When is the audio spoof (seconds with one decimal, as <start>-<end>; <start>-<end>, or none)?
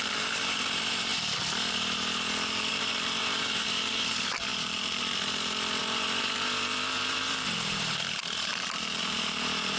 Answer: 0.0-1.1; 2.7-4.5; 5.8-8.5; 9.0-9.8